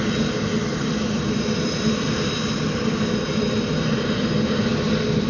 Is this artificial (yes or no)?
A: no